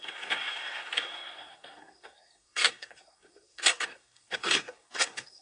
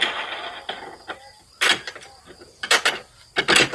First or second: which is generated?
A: first